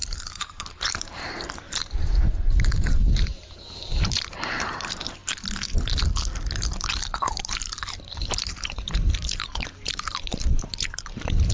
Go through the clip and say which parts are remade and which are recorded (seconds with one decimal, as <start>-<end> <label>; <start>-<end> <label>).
0.0-5.2 remade; 5.2-7.2 recorded; 7.2-11.5 remade